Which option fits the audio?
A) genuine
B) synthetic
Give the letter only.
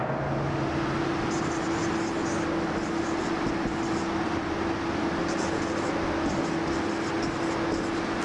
A